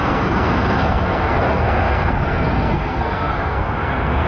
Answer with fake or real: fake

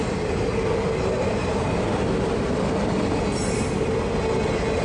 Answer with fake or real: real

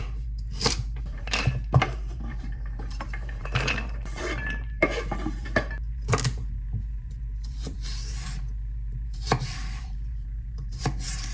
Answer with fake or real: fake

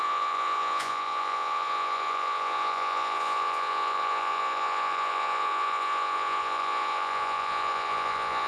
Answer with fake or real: fake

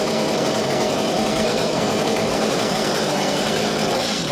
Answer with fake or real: fake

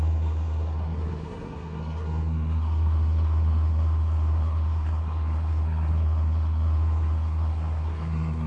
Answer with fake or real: fake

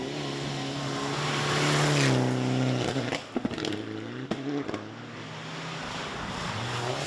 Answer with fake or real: real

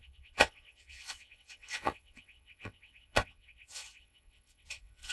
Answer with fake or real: fake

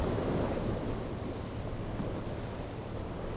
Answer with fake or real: real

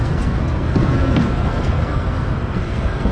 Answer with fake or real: fake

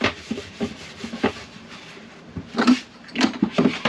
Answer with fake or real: fake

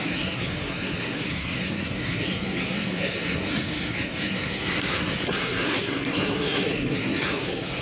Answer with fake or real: fake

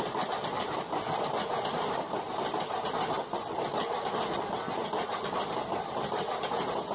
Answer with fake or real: real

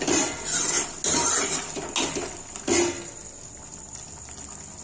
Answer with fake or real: real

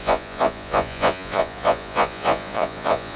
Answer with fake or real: fake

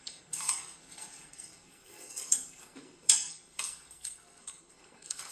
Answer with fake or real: fake